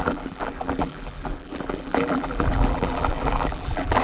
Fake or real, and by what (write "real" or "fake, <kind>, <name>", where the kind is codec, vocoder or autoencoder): fake, vocoder, BigVGAN v2